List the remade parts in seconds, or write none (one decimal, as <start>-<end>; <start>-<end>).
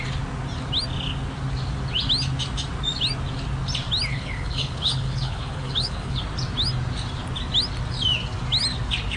4.1-6.2